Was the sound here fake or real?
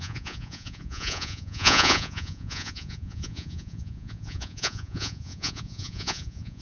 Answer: fake